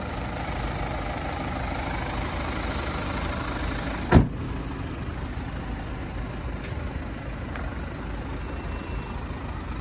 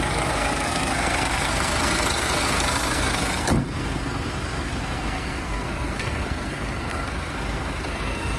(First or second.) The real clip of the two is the first